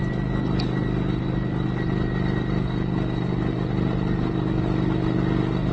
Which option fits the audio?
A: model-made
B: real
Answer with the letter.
B